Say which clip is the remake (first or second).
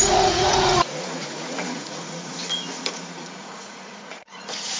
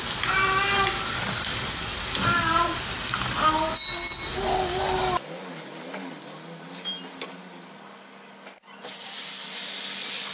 first